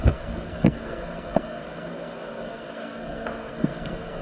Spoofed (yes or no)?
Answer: yes